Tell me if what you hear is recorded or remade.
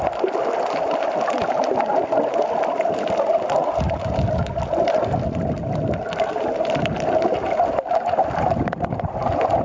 recorded